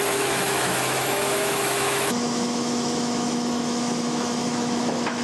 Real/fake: fake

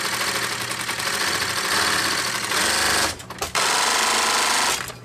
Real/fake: real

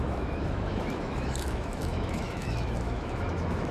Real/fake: fake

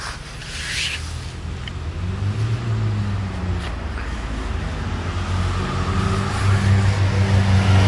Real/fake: real